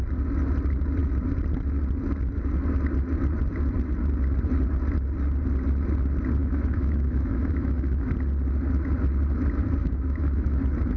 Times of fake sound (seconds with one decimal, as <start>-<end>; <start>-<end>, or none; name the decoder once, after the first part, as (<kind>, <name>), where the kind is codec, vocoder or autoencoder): 6.4-8.1 (autoencoder, DAC-VAE); 9.8-10.6